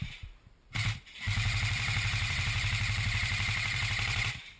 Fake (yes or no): yes